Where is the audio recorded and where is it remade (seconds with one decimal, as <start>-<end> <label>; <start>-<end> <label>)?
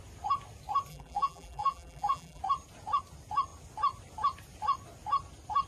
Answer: 0.0-0.9 recorded; 0.9-2.4 remade; 2.4-5.7 recorded